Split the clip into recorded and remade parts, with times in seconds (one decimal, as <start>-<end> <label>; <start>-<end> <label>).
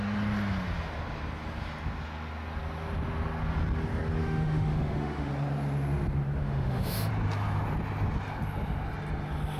0.0-4.2 recorded; 4.2-5.3 remade; 5.3-6.4 recorded; 6.4-7.1 remade; 7.1-9.6 recorded